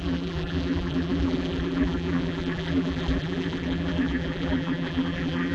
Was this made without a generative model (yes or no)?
no